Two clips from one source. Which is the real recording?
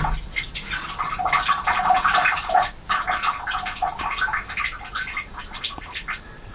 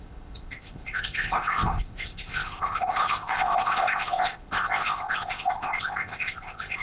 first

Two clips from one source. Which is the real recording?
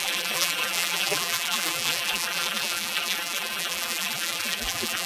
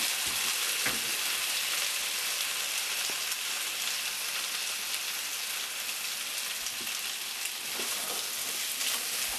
second